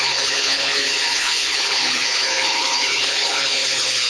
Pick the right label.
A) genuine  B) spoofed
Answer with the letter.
B